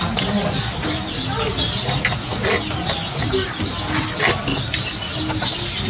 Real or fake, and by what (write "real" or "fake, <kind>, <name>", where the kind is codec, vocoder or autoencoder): real